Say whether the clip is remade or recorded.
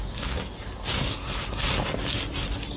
recorded